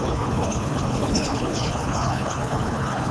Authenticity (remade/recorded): remade